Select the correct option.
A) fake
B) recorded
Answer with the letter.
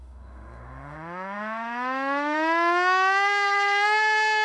A